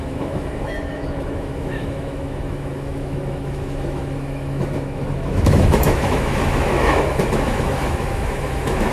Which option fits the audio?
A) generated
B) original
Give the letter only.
A